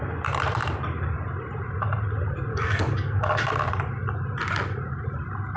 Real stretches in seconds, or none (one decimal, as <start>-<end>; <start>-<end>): 0.0-2.5; 3.5-5.6